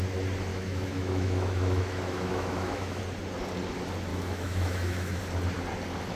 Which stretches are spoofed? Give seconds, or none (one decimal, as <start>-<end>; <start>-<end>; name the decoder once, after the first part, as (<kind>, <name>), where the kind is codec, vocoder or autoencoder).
0.5-3.0 (autoencoder, DAC-VAE); 4.1-5.2